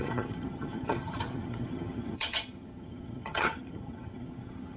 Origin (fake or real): fake